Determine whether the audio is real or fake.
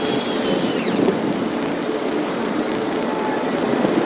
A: real